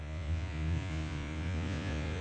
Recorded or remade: remade